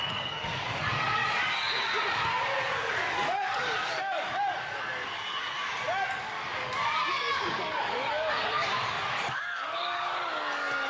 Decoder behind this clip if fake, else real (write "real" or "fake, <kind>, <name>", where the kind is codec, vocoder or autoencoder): fake, codec, DAC